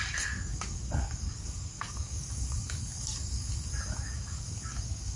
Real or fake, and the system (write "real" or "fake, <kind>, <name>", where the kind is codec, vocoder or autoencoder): fake, codec, DAC